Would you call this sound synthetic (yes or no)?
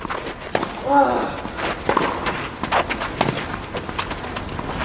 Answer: no